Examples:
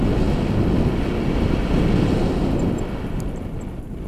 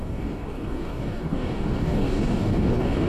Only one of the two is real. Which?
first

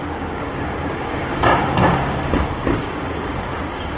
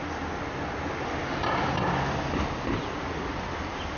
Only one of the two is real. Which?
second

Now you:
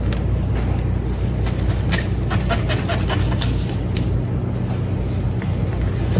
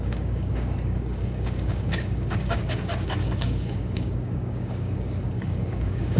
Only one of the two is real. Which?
first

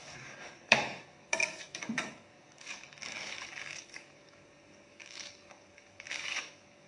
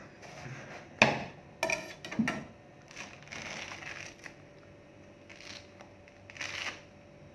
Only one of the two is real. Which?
second